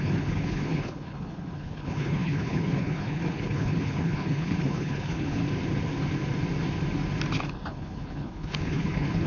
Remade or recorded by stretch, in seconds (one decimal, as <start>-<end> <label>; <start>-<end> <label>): 0.0-5.4 remade; 5.4-7.7 recorded; 7.7-9.3 remade